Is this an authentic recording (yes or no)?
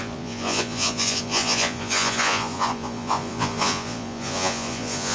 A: no